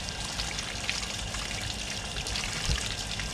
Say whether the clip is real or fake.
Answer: real